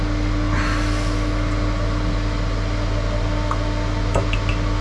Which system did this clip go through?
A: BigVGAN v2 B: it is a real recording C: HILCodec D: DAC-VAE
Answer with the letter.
B